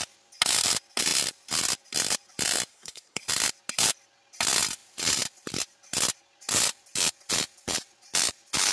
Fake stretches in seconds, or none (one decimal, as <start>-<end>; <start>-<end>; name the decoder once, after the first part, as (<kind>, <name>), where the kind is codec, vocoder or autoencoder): 2.7-3.2 (codec, SNAC)